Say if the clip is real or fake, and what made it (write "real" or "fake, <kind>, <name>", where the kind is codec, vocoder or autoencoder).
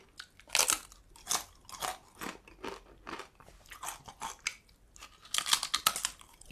real